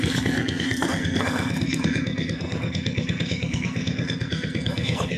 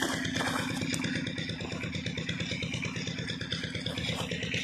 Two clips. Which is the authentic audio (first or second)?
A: second